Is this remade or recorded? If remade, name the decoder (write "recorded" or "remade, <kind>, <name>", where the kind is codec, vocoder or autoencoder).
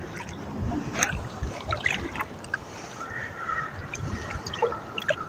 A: remade, vocoder, BigVGAN v2